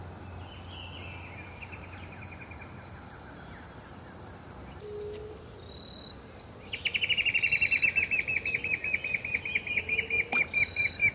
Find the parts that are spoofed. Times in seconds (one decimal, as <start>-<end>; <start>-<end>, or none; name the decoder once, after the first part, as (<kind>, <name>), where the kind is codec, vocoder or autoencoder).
none